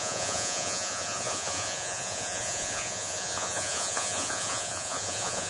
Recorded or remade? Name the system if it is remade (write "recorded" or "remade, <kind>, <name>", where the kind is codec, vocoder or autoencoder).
remade, vocoder, Vocos